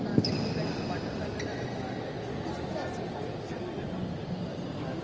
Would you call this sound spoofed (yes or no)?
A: no